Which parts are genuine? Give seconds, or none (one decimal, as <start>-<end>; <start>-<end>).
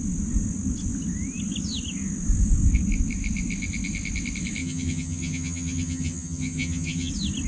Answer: 0.0-4.6; 7.1-7.5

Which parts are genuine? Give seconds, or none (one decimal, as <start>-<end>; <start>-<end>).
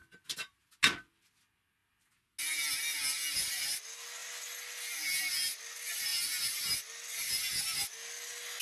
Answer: 0.0-8.6